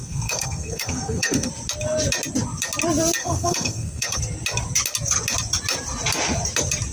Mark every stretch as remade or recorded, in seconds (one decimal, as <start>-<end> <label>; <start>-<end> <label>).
0.0-1.5 remade; 1.5-3.2 recorded; 3.2-4.2 remade; 4.2-6.9 recorded